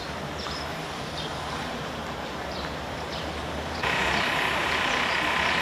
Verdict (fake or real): fake